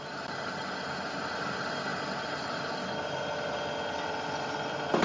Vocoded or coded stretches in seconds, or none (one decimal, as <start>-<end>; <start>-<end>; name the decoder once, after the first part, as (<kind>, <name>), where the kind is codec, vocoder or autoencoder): none